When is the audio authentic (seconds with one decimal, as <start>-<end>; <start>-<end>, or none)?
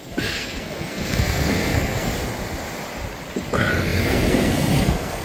2.1-3.5